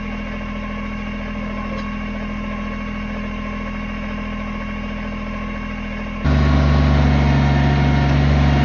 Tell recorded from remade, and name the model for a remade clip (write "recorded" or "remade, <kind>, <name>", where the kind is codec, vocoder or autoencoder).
recorded